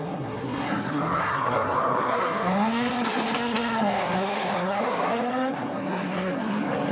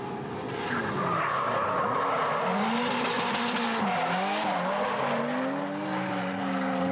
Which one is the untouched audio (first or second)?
second